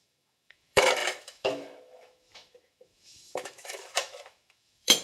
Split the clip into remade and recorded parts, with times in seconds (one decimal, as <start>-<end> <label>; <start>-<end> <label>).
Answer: 0.0-5.0 remade